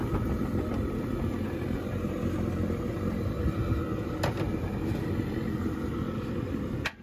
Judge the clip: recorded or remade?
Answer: recorded